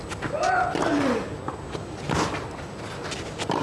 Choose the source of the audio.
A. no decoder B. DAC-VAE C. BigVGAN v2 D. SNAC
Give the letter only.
A